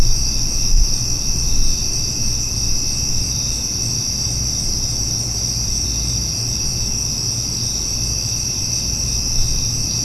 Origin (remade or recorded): recorded